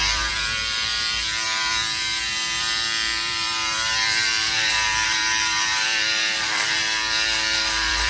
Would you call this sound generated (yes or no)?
yes